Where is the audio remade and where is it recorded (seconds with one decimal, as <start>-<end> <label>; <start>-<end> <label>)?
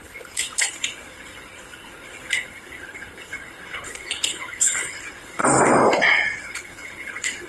0.0-5.4 remade; 5.4-6.4 recorded; 6.4-7.5 remade